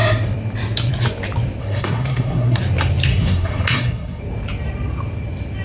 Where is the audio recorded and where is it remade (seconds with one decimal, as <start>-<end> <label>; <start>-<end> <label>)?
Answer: 0.0-1.6 recorded; 1.6-2.6 remade; 2.6-3.1 recorded; 3.1-4.2 remade; 4.2-5.6 recorded

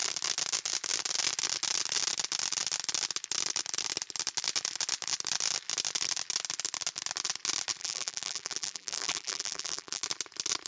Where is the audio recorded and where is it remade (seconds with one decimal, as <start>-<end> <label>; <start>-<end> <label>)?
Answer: 0.0-7.8 recorded; 7.8-10.0 remade; 10.0-10.7 recorded

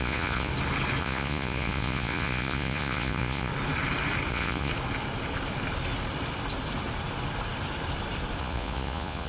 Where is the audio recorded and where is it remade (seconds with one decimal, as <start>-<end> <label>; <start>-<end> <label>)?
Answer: 0.0-0.5 remade; 0.5-1.0 recorded; 1.0-3.5 remade; 3.5-4.3 recorded; 4.3-4.7 remade; 4.7-8.4 recorded; 8.4-9.3 remade